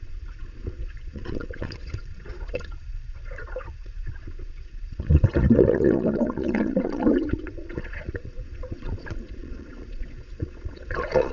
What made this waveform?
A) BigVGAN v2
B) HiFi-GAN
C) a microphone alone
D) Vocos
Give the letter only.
D